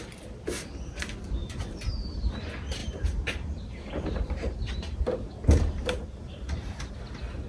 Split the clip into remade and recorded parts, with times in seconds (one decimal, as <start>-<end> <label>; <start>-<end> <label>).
0.0-1.4 recorded; 1.4-2.3 remade; 2.3-2.8 recorded; 2.8-6.9 remade; 6.9-7.5 recorded